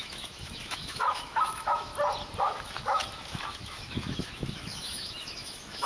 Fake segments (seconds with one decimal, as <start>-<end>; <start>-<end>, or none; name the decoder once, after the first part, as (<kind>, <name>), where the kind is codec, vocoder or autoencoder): 0.0-1.9 (autoencoder, DAC-VAE); 2.4-5.9